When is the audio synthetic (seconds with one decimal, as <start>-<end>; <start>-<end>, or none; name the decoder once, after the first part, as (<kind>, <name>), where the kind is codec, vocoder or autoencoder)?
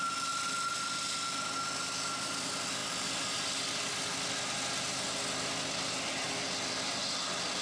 none